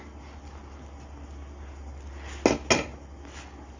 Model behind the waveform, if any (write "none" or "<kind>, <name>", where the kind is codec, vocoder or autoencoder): none